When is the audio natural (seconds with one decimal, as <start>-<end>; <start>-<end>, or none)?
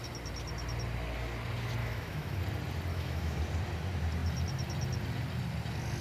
0.0-1.8; 2.4-2.9; 3.4-6.0